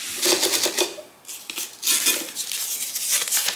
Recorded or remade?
recorded